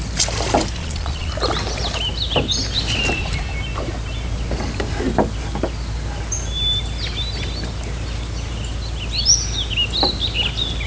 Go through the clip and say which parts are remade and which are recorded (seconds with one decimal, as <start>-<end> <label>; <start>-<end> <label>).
0.0-0.8 recorded; 0.8-1.3 remade; 1.3-10.9 recorded

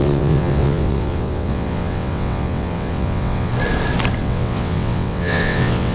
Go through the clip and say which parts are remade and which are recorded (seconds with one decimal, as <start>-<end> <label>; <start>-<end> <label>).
0.0-3.5 remade; 3.5-4.2 recorded; 4.2-5.9 remade

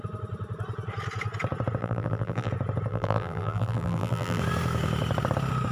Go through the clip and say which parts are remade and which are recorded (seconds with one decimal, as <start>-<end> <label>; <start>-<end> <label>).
0.0-1.8 recorded; 1.8-2.5 remade; 2.5-2.9 recorded; 2.9-4.4 remade; 4.4-5.7 recorded

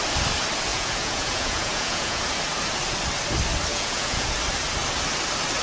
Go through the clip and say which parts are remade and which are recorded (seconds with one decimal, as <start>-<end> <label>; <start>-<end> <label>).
0.0-0.7 recorded; 0.7-2.2 remade; 2.2-3.7 recorded; 3.7-4.3 remade; 4.3-5.6 recorded

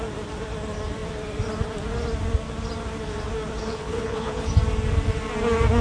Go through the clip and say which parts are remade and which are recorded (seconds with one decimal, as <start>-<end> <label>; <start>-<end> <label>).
0.0-3.6 recorded; 3.6-4.5 remade; 4.5-5.8 recorded

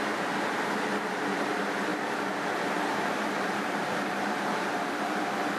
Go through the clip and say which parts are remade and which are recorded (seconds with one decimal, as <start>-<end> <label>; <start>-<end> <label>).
0.0-5.6 remade